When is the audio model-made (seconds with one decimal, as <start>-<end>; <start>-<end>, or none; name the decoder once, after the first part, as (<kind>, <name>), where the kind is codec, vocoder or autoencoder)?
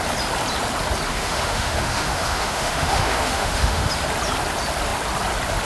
1.1-3.9 (autoencoder, DAC-VAE)